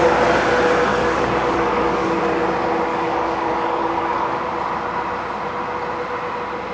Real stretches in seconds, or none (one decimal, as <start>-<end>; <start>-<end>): 0.0-0.9; 2.2-2.9; 4.4-6.7